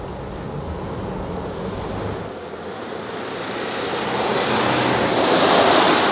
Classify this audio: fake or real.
real